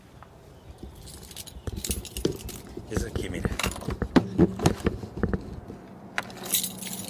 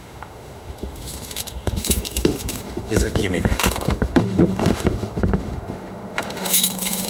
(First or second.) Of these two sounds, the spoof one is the second